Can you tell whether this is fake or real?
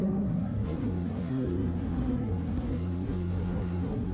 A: fake